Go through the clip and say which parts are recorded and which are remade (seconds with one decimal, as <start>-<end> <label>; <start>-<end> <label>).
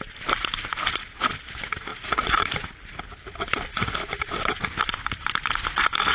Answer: 0.0-1.9 recorded; 1.9-2.6 remade; 2.6-3.7 recorded; 3.7-4.4 remade; 4.4-6.1 recorded